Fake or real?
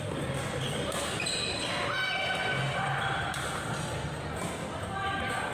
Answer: real